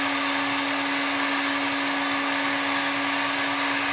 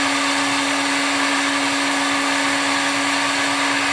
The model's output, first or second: second